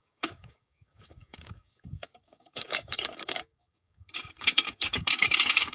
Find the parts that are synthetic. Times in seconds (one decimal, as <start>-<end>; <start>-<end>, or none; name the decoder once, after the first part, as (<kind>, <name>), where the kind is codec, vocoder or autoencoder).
0.0-5.7 (codec, DAC)